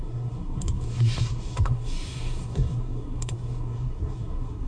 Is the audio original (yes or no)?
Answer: no